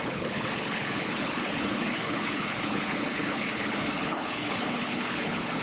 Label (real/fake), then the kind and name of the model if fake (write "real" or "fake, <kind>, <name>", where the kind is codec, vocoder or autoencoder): fake, codec, HILCodec